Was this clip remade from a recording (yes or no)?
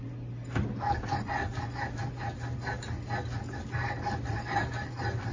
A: no